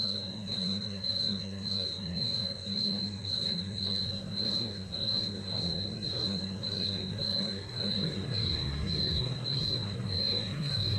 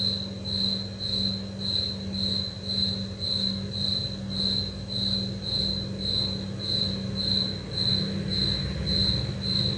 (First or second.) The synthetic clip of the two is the first